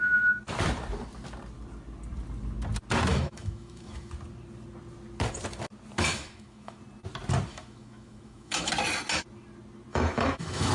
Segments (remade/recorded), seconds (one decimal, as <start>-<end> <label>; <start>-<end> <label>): 0.0-3.1 recorded; 3.1-4.1 remade; 4.1-6.1 recorded; 6.1-6.8 remade; 6.8-7.5 recorded; 7.5-8.7 remade; 8.7-9.9 recorded; 9.9-10.7 remade